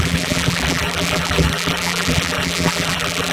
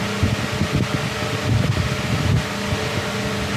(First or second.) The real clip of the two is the second